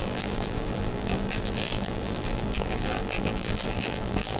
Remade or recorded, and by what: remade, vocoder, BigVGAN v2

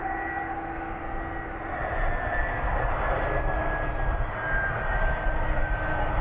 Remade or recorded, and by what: recorded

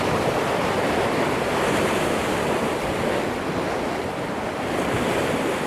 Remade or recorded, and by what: recorded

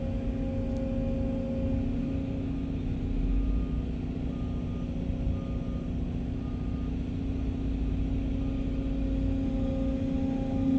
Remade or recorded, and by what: recorded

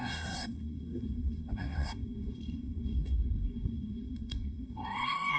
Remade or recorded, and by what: remade, codec, SNAC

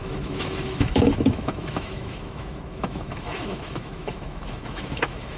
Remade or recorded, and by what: remade, autoencoder, DAC-VAE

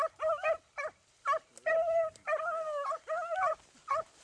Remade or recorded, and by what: recorded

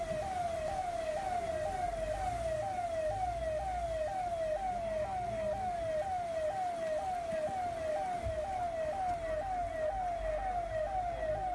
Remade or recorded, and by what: recorded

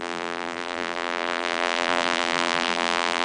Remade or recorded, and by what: remade, vocoder, BigVGAN v2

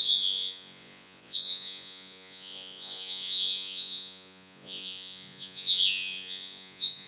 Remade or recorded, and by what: remade, vocoder, Vocos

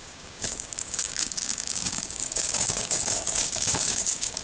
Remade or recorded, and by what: remade, codec, DAC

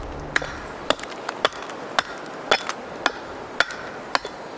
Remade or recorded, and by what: recorded